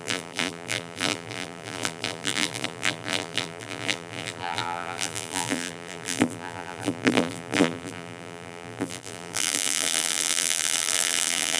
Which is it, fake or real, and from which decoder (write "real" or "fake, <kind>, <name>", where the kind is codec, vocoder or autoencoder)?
fake, vocoder, BigVGAN v2